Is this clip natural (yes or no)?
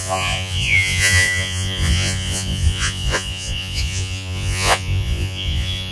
no